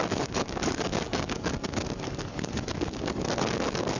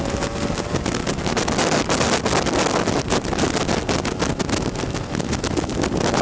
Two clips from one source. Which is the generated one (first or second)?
first